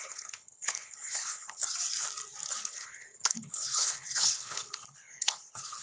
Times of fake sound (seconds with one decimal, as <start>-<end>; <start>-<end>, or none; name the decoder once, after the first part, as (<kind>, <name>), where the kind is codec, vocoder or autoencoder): 0.0-1.6 (codec, HILCodec); 2.6-5.8